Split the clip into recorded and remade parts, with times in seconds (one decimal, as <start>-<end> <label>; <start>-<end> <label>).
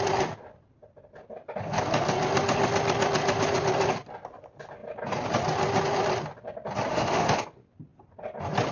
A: 0.0-6.9 recorded; 6.9-7.4 remade; 7.4-8.7 recorded